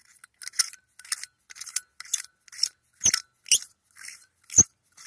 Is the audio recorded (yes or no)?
yes